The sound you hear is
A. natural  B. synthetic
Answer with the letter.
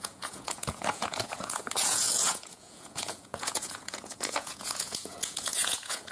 B